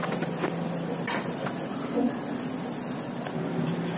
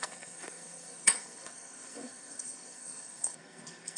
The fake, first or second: second